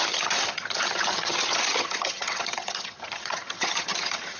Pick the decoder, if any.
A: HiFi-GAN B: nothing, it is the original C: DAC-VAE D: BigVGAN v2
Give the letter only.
A